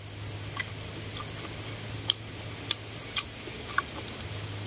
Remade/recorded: recorded